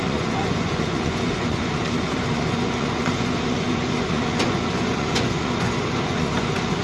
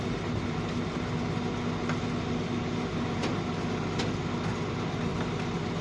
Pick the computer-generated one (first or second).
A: first